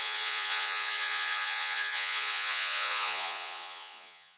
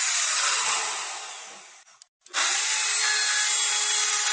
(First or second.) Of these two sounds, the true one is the second